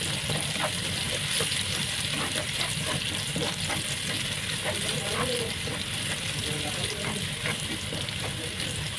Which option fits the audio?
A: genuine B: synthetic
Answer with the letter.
A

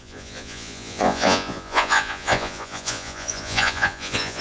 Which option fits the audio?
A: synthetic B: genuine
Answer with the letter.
A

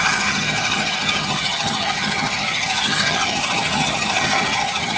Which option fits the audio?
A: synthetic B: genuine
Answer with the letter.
A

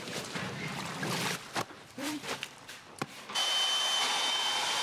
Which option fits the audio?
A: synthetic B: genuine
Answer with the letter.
A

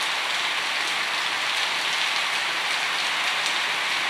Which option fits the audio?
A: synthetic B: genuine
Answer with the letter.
B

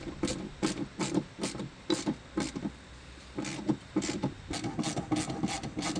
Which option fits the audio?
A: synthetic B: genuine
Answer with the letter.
B